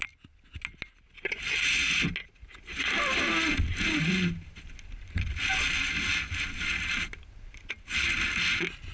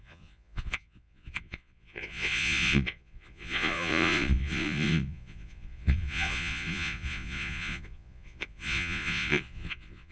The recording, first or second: first